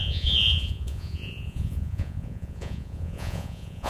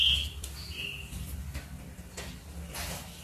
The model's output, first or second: first